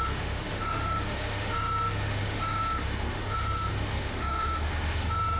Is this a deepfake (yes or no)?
yes